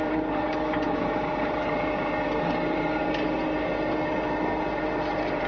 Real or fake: fake